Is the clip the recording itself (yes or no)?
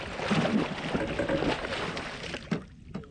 yes